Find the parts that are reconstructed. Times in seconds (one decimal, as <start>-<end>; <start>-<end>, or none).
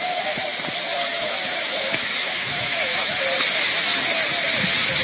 0.9-3.2